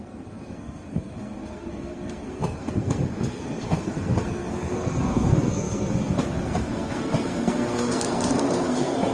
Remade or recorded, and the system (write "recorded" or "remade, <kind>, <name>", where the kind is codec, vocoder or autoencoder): remade, codec, SNAC